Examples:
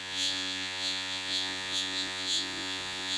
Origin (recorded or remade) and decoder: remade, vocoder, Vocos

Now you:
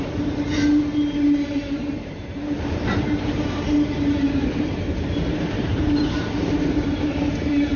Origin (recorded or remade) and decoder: remade, vocoder, BigVGAN v2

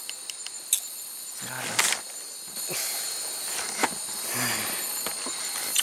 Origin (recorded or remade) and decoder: recorded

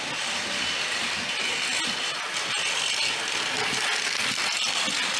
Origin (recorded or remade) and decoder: recorded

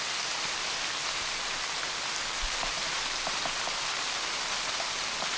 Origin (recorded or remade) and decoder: recorded